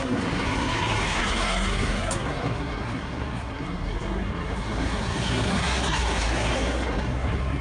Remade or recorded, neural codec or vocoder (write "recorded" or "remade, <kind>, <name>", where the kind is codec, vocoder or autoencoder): remade, codec, SNAC